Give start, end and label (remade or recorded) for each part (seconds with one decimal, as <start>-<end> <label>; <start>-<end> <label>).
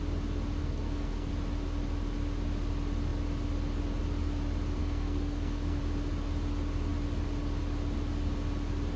0.0-0.6 recorded; 0.6-1.3 remade; 1.3-4.8 recorded; 4.8-5.8 remade; 5.8-9.0 recorded